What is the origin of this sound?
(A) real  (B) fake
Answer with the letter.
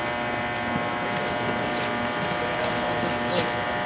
A